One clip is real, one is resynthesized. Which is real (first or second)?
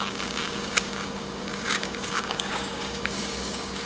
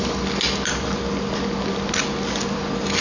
second